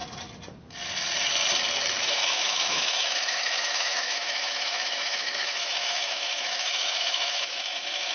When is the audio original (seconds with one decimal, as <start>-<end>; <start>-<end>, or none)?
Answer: 0.0-2.0